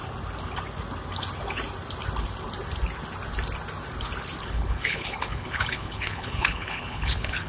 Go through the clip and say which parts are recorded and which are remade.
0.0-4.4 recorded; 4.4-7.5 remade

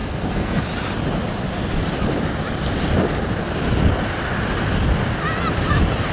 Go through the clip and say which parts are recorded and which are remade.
0.0-0.6 remade; 0.6-6.1 recorded

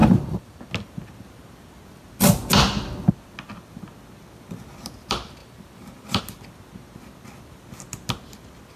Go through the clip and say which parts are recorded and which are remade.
0.0-0.7 remade; 0.7-5.4 recorded; 5.4-6.2 remade; 6.2-8.8 recorded

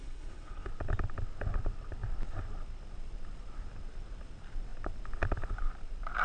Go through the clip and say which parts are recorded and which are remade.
0.0-0.7 remade; 0.7-6.2 recorded

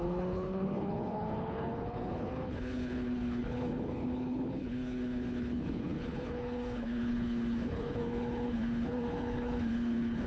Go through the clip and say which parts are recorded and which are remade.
0.0-10.3 remade

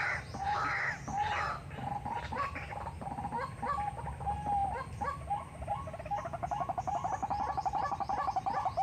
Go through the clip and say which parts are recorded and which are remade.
0.0-8.8 recorded

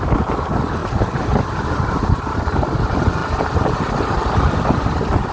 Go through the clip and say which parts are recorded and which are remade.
0.0-5.3 recorded

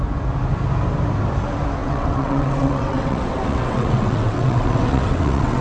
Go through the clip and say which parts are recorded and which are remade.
0.0-1.8 recorded; 1.8-5.6 remade